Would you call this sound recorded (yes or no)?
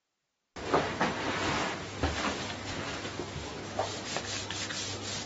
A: yes